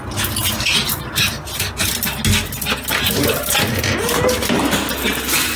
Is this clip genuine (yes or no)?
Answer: yes